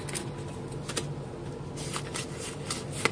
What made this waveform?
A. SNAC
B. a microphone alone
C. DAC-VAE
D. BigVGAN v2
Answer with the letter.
B